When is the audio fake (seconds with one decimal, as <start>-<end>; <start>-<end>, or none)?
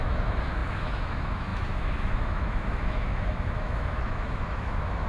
0.0-5.1